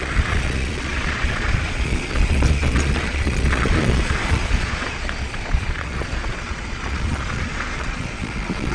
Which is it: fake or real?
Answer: fake